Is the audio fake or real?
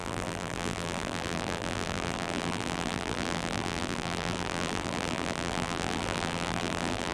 fake